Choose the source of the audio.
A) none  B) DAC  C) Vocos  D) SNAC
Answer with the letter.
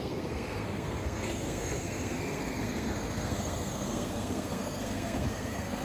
D